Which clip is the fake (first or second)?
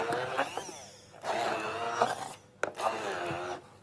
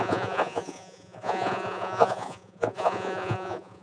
second